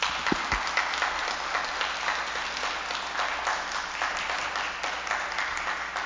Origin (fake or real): real